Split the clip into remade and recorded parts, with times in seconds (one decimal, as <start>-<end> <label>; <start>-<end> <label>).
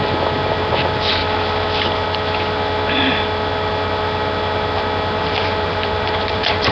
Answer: 0.0-1.2 remade; 1.2-5.2 recorded; 5.2-6.7 remade